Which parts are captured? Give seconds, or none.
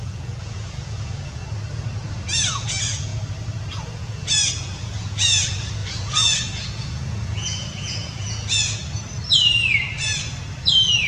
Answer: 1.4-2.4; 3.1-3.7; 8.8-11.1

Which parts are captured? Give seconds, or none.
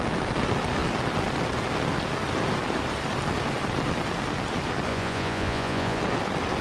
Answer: 0.0-4.9; 6.0-6.6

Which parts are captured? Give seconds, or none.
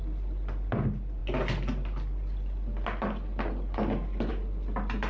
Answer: 0.0-5.1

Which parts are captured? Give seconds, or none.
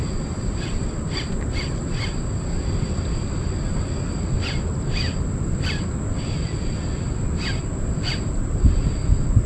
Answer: 0.0-9.5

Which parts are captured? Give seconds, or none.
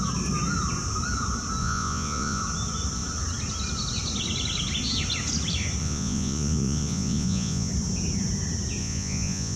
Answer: 0.0-1.6; 2.4-5.8; 7.7-8.8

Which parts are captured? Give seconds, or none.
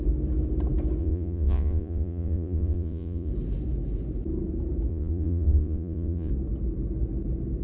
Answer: 0.0-1.0; 3.3-4.9; 6.3-7.6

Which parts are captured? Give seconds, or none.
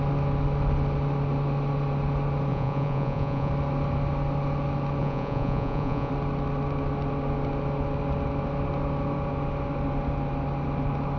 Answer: 0.0-2.5; 3.5-5.0; 6.1-11.2